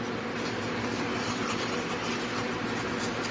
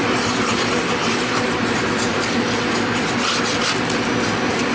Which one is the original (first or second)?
first